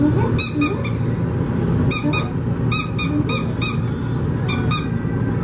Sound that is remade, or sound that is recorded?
recorded